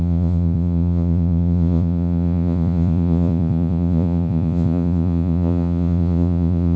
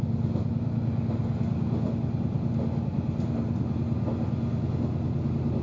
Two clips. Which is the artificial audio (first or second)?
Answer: first